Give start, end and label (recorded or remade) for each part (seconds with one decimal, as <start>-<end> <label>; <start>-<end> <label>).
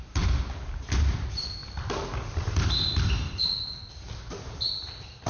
0.0-5.3 recorded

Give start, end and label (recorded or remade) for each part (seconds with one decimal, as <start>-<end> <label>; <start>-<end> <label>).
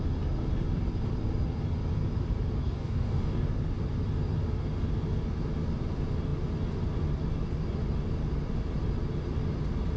0.0-2.6 recorded; 2.6-3.5 remade; 3.5-10.0 recorded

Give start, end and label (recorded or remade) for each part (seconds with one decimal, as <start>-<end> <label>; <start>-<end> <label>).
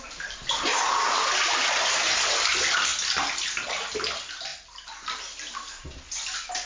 0.0-6.7 recorded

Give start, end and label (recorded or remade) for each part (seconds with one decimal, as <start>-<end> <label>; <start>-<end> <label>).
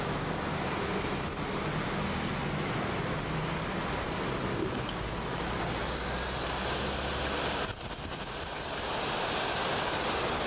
0.0-4.5 recorded; 4.5-5.1 remade; 5.1-10.5 recorded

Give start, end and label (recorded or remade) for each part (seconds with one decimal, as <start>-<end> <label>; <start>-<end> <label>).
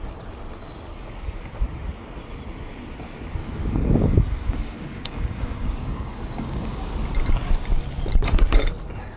0.0-3.4 recorded; 3.4-6.9 remade; 6.9-9.2 recorded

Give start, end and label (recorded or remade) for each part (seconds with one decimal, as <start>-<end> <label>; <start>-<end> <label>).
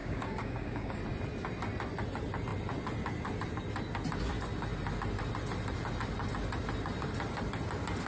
0.0-1.0 remade; 1.0-8.1 recorded